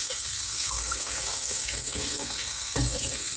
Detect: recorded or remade remade